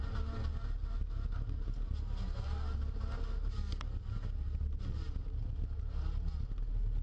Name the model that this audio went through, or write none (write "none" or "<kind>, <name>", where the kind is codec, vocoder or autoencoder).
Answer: none